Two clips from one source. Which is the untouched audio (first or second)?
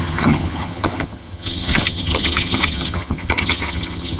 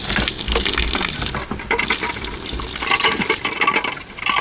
second